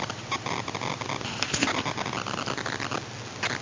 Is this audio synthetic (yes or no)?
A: no